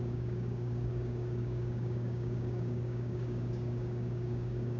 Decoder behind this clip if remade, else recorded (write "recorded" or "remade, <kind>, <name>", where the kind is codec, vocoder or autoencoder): remade, codec, DAC